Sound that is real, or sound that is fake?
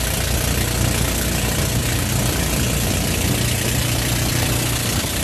real